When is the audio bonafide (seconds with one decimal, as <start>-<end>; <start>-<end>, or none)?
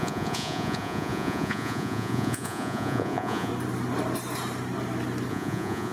3.5-5.3